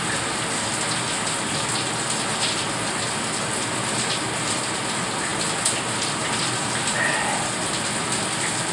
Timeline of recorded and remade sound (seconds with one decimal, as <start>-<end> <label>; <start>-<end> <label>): 0.0-8.7 recorded